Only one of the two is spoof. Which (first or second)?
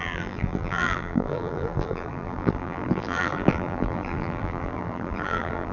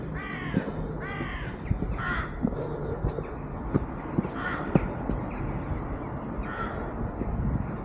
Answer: first